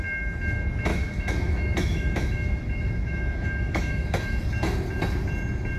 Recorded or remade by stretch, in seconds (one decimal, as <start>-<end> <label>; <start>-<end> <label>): 0.0-0.9 recorded; 0.9-4.4 remade; 4.4-5.8 recorded

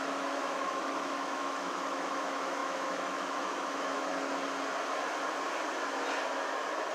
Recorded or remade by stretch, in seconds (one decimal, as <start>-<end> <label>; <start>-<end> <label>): 0.0-4.1 remade; 4.1-6.9 recorded

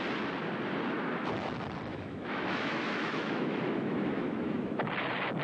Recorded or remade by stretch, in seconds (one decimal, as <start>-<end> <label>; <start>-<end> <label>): 0.0-1.9 recorded; 1.9-4.9 remade; 4.9-5.4 recorded

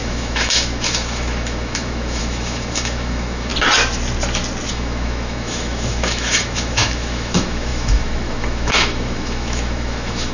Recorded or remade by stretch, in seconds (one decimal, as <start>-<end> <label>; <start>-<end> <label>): 0.0-3.5 remade; 3.5-4.7 recorded; 4.7-10.3 remade

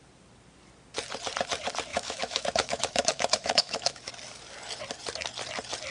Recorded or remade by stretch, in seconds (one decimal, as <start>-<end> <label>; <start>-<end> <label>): 0.0-1.9 recorded; 1.9-4.1 remade; 4.1-5.9 recorded

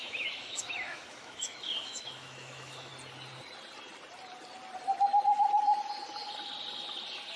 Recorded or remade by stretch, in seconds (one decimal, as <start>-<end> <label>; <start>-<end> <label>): 0.0-2.9 remade; 2.9-7.4 recorded

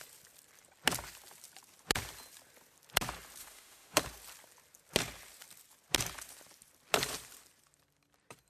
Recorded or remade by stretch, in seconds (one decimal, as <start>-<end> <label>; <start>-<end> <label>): 0.0-3.4 recorded; 3.4-4.0 remade; 4.0-8.5 recorded

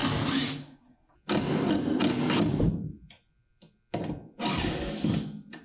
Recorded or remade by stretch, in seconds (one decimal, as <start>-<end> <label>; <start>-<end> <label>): 0.0-5.6 recorded